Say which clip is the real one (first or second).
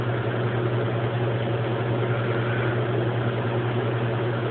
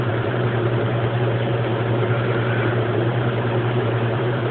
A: first